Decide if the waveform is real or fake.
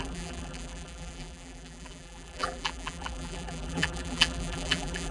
fake